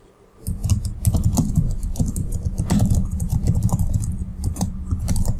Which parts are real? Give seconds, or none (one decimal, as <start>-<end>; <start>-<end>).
0.0-5.4